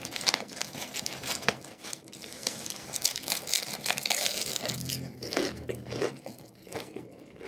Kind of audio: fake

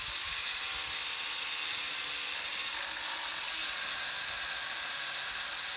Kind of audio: real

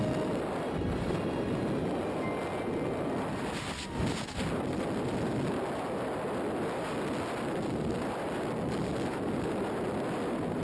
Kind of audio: real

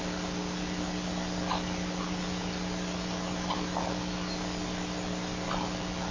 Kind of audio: real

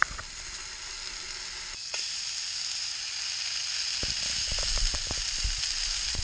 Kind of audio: real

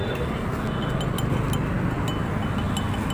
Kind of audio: real